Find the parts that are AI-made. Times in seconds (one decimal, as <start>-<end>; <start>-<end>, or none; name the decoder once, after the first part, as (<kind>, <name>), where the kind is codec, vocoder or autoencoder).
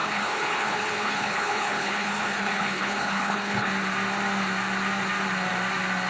0.0-3.7 (codec, HILCodec)